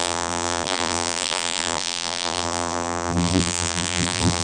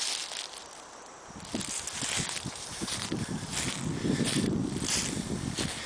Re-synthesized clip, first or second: first